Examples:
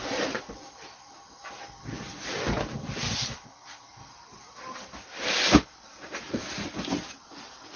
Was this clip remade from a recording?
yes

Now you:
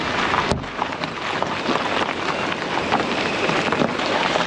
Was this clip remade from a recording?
yes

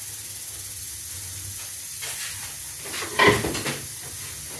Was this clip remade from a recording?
no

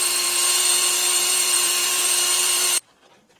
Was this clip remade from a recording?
yes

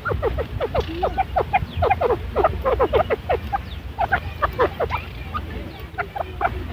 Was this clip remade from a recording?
no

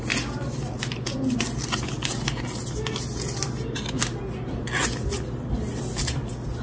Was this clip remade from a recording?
no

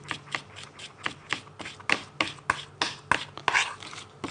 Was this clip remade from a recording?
no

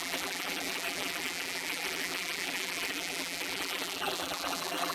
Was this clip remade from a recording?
yes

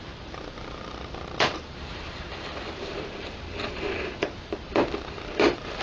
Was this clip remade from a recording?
yes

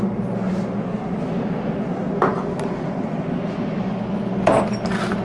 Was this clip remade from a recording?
no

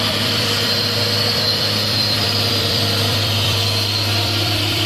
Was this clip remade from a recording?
yes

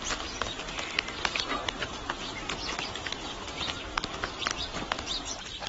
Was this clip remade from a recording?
yes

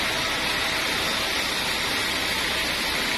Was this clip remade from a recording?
no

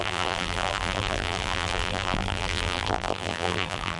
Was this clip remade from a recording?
yes